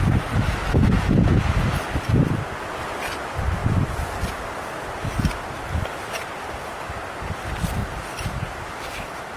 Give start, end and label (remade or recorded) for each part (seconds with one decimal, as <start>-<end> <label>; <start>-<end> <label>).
0.0-3.6 recorded; 3.6-4.2 remade; 4.2-7.8 recorded; 7.8-8.7 remade; 8.7-9.4 recorded